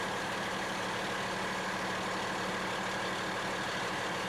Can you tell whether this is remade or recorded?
recorded